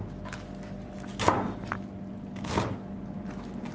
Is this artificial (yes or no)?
no